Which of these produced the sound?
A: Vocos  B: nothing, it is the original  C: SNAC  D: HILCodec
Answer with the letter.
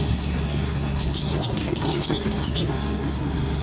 C